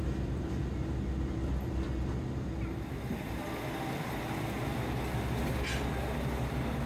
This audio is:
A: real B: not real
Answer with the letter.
A